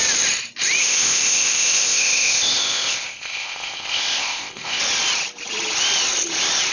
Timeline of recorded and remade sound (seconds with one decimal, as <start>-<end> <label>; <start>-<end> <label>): 0.0-0.8 recorded; 0.8-4.8 remade; 4.8-6.7 recorded